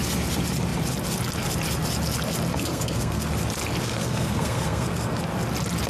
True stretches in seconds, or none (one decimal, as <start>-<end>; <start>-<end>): 0.0-2.5; 3.3-3.8; 5.2-5.9

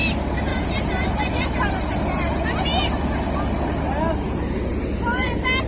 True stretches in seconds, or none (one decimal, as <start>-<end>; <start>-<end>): 0.0-0.5; 2.3-5.7

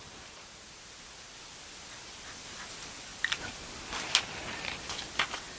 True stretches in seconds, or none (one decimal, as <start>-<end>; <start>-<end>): 0.0-5.6

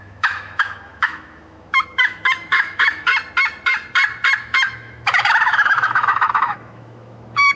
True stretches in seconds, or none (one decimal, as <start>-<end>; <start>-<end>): 3.1-4.4

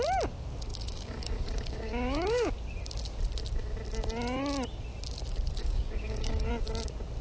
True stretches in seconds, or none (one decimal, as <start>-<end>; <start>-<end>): 0.0-0.7; 2.5-5.6; 6.5-7.2

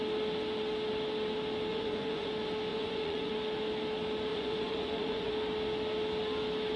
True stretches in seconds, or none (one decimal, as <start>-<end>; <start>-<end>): 0.0-1.7; 2.3-2.7; 3.3-4.3; 5.3-6.8

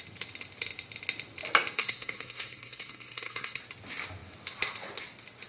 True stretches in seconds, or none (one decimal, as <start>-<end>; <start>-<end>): 0.0-1.8; 3.6-5.5

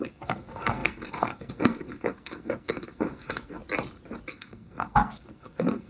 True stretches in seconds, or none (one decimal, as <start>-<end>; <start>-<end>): 3.6-4.3